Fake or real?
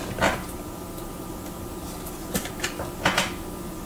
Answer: real